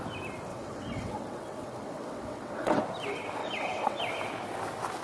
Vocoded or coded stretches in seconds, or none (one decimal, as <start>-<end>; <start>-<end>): 0.5-2.8; 3.4-4.0